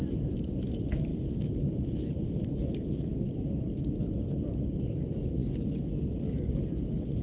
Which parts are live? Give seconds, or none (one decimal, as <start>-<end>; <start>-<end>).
5.4-6.5